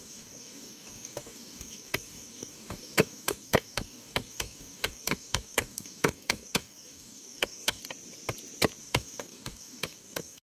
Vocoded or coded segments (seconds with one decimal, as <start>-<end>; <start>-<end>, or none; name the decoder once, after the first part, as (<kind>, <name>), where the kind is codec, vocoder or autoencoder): 0.0-7.8 (codec, DAC); 8.8-10.4